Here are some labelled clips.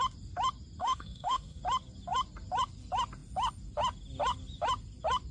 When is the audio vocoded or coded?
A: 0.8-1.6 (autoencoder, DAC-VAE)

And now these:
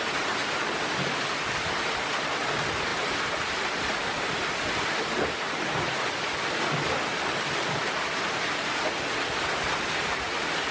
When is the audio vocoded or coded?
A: none

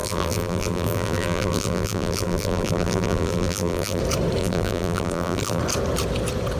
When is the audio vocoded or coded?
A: 0.0-4.0 (vocoder, BigVGAN v2); 4.4-5.6

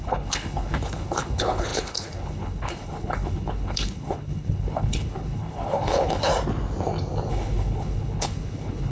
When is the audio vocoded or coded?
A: 0.0-6.3 (codec, HILCodec); 7.3-8.9

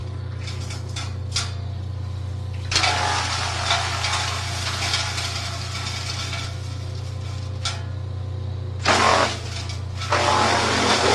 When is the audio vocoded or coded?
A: none